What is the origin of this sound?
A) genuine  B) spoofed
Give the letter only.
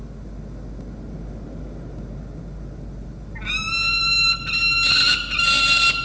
A